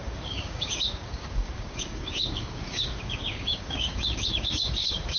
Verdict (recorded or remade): remade